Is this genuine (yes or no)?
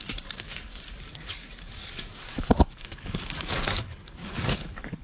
no